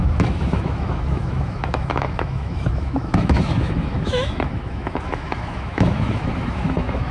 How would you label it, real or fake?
fake